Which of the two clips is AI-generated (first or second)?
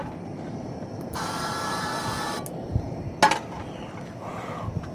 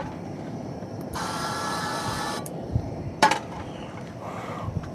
second